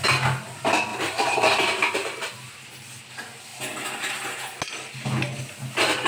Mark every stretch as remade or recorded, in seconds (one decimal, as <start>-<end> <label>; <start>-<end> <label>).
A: 0.0-0.9 recorded; 0.9-2.5 remade; 2.5-6.1 recorded